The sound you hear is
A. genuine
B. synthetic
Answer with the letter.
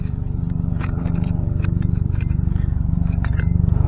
B